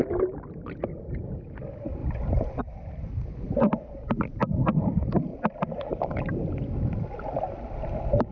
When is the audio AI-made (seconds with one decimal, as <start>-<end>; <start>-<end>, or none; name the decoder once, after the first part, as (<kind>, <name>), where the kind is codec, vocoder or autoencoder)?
none